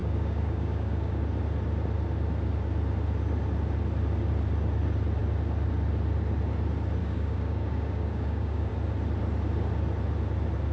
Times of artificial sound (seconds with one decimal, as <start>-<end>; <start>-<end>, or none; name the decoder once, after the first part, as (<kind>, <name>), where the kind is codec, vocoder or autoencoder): 0.0-1.2 (codec, DAC); 7.0-8.7